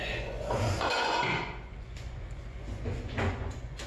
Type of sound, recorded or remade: remade